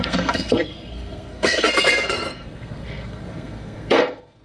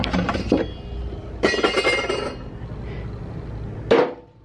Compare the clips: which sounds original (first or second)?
second